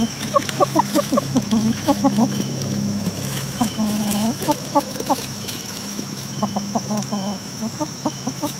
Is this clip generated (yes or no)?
yes